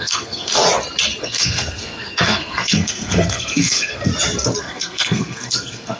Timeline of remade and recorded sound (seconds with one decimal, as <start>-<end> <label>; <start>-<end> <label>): 0.0-0.6 remade; 0.6-1.2 recorded; 1.2-4.1 remade; 4.1-4.6 recorded; 4.6-6.0 remade